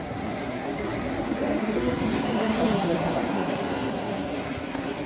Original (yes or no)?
no